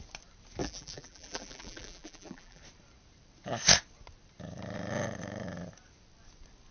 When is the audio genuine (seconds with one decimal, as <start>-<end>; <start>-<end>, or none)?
0.0-0.6; 2.6-6.7